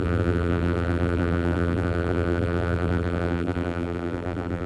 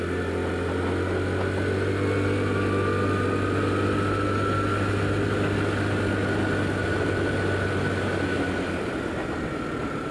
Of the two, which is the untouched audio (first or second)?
second